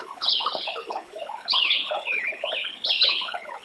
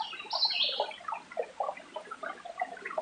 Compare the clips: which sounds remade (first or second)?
first